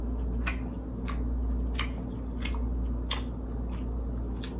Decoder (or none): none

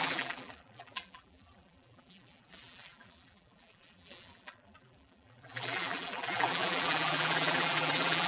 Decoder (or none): vocoder, BigVGAN v2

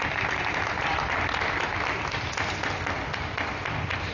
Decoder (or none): none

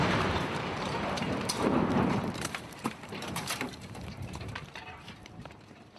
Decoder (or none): vocoder, BigVGAN v2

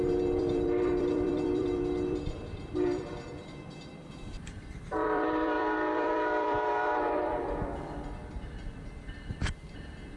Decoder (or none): vocoder, BigVGAN v2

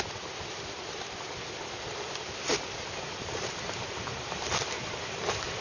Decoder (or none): vocoder, BigVGAN v2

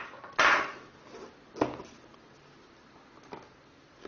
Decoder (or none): none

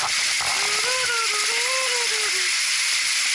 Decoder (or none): none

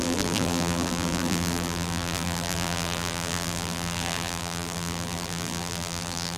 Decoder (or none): vocoder, BigVGAN v2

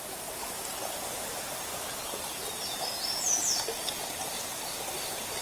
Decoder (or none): none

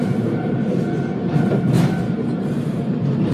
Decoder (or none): vocoder, BigVGAN v2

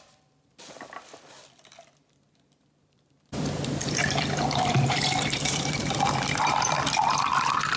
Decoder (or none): vocoder, BigVGAN v2